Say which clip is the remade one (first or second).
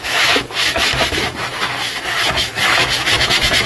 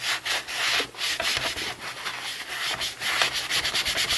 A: first